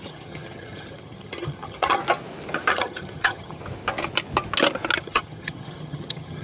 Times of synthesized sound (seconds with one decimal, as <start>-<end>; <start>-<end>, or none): 0.0-2.0; 2.7-3.6; 5.0-6.4